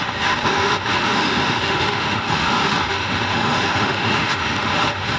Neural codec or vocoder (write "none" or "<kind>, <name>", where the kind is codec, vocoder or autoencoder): autoencoder, DAC-VAE